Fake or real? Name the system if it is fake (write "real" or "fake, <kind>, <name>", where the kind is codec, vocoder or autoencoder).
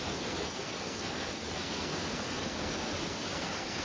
fake, codec, SNAC